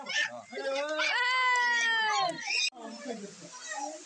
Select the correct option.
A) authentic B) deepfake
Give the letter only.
A